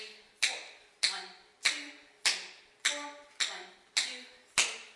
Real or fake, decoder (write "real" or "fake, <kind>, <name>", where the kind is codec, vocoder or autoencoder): real